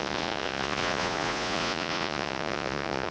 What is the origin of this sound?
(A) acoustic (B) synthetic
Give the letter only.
B